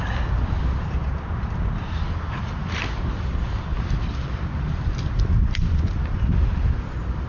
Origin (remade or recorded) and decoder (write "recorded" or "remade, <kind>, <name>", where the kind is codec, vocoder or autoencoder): recorded